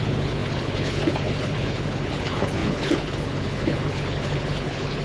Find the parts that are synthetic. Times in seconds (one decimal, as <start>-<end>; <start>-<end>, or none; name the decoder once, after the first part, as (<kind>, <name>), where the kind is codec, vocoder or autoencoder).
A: 0.0-5.0 (codec, HILCodec)